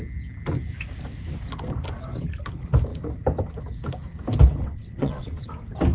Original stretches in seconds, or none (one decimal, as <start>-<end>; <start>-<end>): 0.0-4.6; 5.5-5.9